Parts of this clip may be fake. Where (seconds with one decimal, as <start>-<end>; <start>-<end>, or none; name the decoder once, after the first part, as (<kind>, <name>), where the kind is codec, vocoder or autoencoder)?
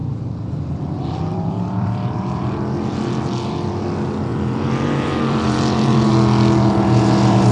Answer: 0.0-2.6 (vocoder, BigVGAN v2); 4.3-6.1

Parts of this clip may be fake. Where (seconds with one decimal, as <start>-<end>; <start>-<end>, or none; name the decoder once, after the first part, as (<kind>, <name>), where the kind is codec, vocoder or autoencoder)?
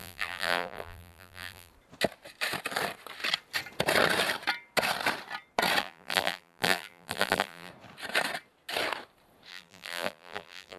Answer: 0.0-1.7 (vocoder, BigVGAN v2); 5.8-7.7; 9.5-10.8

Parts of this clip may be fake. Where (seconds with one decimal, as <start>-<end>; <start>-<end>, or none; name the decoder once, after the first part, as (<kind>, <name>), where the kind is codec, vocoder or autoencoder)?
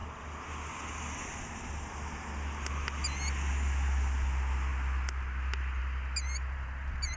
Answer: 6.2-7.2 (vocoder, BigVGAN v2)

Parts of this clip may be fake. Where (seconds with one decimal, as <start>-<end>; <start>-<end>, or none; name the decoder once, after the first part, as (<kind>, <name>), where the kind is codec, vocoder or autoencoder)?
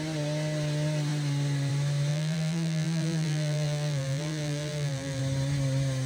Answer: 2.1-5.2 (vocoder, BigVGAN v2)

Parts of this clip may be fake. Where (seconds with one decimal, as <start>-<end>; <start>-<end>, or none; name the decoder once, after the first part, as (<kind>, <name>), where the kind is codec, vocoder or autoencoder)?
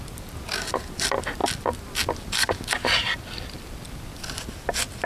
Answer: 0.0-1.4 (vocoder, BigVGAN v2); 3.5-5.1